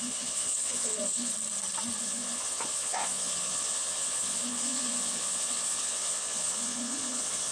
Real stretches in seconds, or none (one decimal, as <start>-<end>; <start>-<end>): 1.3-2.0